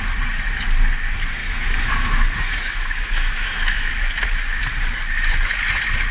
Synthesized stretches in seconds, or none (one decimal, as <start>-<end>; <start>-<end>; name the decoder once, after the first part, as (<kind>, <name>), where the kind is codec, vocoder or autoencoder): 1.4-3.9 (autoencoder, DAC-VAE)